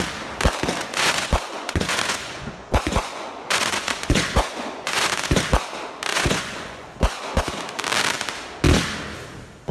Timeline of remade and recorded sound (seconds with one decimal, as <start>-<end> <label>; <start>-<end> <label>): 0.0-0.8 recorded; 0.8-5.4 remade; 5.4-6.1 recorded; 6.1-7.6 remade; 7.6-9.7 recorded